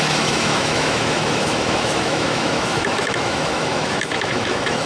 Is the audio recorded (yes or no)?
no